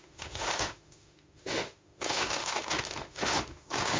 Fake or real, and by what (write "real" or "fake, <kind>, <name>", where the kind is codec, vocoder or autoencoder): fake, autoencoder, DAC-VAE